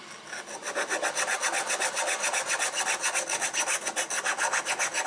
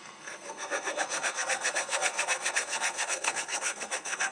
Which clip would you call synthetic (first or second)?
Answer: second